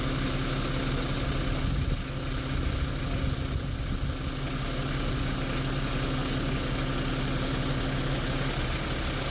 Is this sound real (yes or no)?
yes